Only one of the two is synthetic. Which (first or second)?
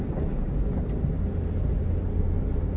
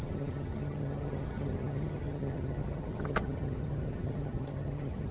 second